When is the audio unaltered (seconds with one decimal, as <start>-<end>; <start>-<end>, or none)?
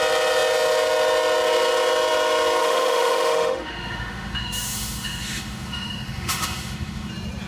0.0-2.6; 7.1-7.5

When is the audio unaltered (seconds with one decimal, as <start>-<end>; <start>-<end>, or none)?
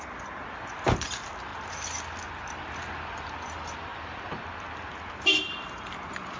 0.0-6.4